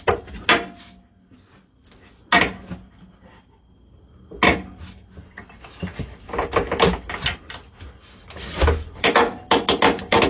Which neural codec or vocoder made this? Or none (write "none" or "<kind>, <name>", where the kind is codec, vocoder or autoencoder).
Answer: none